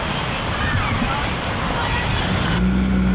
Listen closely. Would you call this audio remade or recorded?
recorded